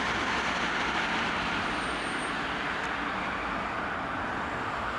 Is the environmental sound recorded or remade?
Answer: recorded